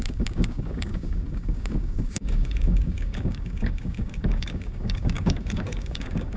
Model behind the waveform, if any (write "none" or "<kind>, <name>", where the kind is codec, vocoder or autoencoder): codec, DAC